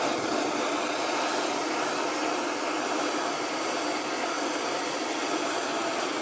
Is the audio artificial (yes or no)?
no